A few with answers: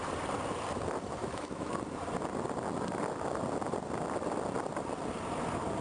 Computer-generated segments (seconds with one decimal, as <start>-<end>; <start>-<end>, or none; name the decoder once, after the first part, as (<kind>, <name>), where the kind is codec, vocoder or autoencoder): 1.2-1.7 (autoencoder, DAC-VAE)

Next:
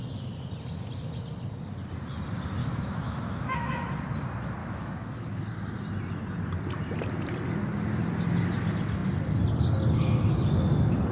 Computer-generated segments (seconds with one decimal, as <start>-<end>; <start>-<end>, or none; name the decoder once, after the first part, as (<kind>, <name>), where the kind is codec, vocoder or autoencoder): 2.6-3.9 (autoencoder, DAC-VAE); 4.6-5.4

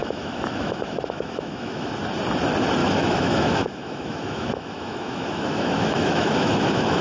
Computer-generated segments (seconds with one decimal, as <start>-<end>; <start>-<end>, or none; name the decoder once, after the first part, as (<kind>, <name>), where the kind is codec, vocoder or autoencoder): 0.0-1.9 (autoencoder, DAC-VAE); 2.8-7.0